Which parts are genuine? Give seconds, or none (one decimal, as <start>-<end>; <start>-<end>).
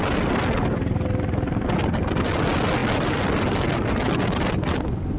0.0-5.2